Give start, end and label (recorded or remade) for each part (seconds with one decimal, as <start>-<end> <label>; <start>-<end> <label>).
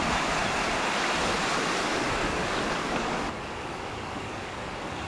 0.0-1.9 recorded; 1.9-5.1 remade